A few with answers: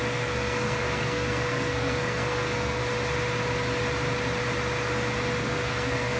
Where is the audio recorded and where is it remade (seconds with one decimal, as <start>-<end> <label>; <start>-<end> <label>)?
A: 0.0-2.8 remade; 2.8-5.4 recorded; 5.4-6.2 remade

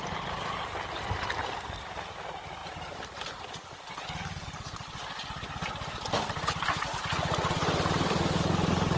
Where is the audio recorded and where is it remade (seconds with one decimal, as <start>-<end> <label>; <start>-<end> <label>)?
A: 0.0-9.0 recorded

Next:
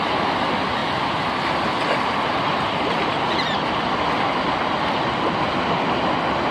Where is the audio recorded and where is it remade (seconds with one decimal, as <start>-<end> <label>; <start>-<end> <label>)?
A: 0.0-6.5 recorded

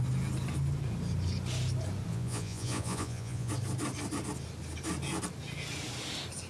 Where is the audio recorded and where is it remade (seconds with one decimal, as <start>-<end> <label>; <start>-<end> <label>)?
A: 0.0-2.1 recorded; 2.1-3.5 remade; 3.5-6.5 recorded

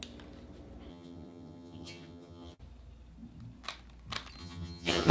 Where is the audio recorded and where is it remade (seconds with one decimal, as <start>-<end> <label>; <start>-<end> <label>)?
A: 0.0-0.9 recorded; 0.9-2.6 remade; 2.6-4.4 recorded; 4.4-5.1 remade